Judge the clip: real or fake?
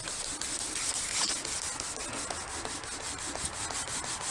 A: real